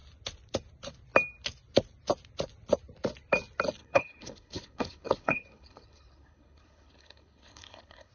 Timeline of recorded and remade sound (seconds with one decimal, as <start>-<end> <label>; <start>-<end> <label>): 0.0-3.8 recorded; 3.8-8.1 remade